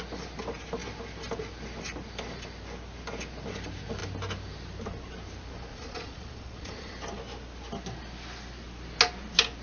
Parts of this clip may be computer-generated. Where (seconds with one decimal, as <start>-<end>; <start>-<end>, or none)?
5.7-6.9